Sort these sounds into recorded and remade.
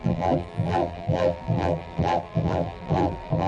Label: remade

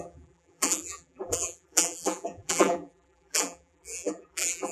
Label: remade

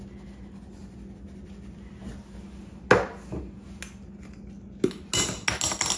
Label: recorded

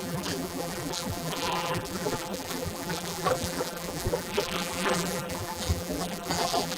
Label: remade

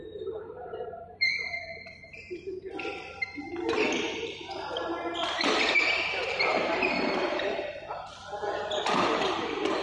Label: remade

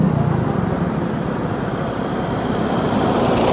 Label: recorded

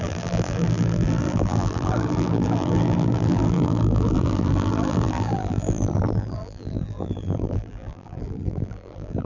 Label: remade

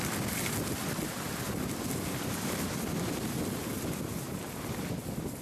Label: recorded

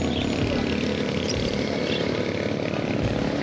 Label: remade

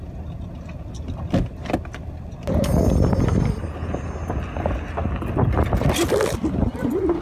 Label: recorded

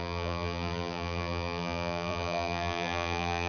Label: remade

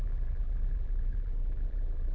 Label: remade